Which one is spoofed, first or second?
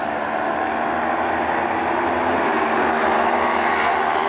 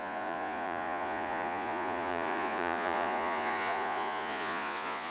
second